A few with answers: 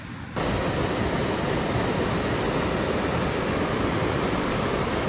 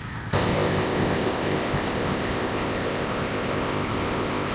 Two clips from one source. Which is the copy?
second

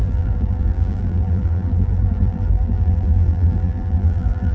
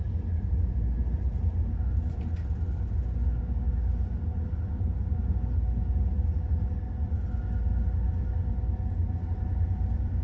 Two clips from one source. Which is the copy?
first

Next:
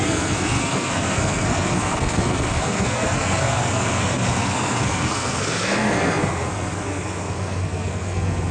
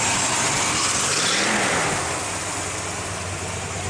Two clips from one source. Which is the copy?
first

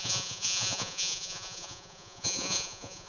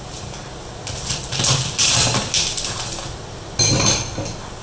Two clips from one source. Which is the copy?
first